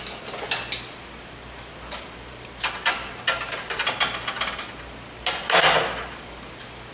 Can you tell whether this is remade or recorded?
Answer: recorded